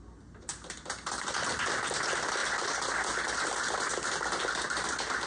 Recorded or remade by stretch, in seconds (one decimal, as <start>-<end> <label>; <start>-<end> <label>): 0.0-5.3 recorded